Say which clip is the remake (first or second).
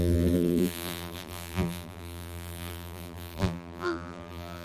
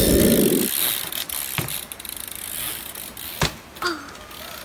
first